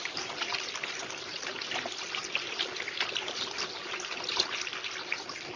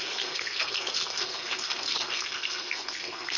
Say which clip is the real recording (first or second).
first